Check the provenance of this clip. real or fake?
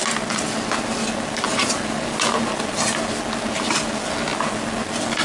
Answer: real